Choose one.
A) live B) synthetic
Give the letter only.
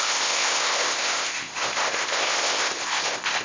B